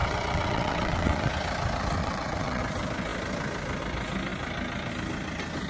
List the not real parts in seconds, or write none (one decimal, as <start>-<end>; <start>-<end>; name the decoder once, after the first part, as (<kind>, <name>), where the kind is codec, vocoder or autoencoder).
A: 0.0-1.3 (vocoder, WaveNeXt); 2.0-2.6